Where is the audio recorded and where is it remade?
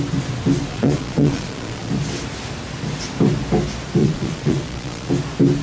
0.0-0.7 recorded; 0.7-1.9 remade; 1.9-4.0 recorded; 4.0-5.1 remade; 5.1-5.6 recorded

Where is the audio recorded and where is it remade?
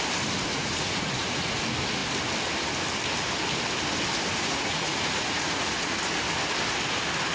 0.0-0.5 recorded; 0.5-1.6 remade; 1.6-4.3 recorded; 4.3-6.0 remade; 6.0-7.3 recorded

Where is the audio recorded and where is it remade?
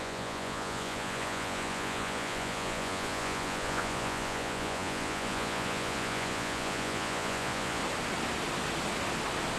0.0-7.8 remade; 7.8-9.6 recorded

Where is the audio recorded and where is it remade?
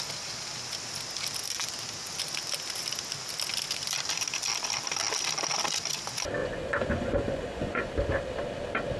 0.0-6.4 recorded; 6.4-7.9 remade; 7.9-9.0 recorded